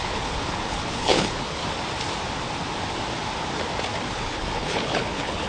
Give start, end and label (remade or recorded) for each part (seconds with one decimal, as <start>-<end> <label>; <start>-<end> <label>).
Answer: 0.0-1.6 remade; 1.6-4.1 recorded; 4.1-5.5 remade